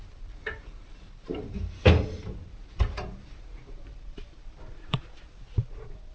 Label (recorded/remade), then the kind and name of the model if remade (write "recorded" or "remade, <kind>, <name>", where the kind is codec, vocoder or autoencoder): remade, vocoder, BigVGAN v2